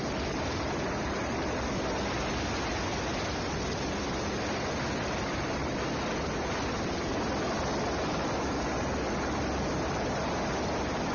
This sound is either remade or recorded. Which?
recorded